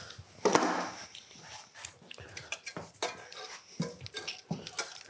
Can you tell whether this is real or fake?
real